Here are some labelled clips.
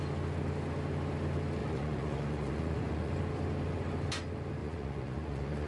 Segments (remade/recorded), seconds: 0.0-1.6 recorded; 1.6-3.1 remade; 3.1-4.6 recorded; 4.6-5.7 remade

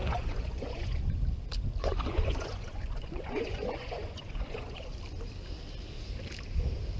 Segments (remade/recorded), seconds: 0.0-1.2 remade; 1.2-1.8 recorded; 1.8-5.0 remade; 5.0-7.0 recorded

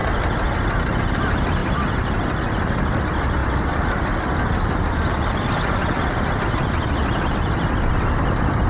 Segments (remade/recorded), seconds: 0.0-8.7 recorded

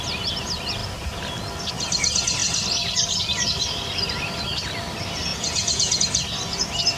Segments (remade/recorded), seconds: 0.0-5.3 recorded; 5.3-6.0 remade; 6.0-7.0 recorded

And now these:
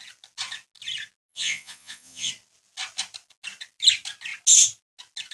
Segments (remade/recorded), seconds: 0.0-1.3 recorded; 1.3-2.3 remade; 2.3-5.3 recorded

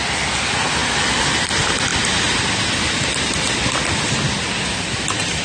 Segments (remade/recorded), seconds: 0.0-5.4 recorded

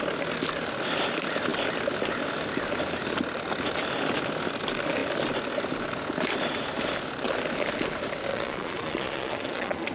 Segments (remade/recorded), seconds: 0.0-8.3 recorded; 8.3-9.9 remade

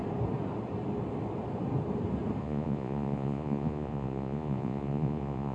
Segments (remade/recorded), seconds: 0.0-2.4 recorded; 2.4-5.5 remade